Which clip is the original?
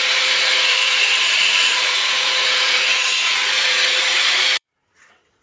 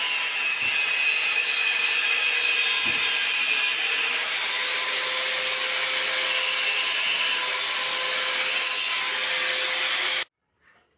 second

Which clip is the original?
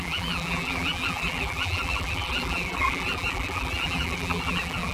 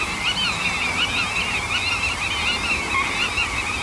second